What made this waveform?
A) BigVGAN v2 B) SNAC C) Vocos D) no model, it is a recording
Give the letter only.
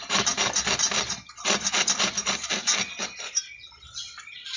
D